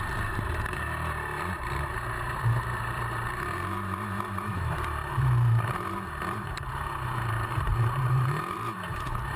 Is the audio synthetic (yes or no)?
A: yes